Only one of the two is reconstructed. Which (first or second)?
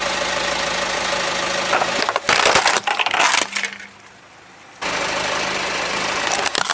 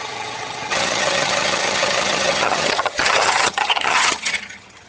second